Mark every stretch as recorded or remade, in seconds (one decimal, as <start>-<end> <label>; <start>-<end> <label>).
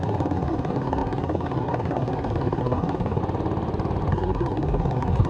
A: 0.0-3.2 remade; 3.2-4.1 recorded; 4.1-5.3 remade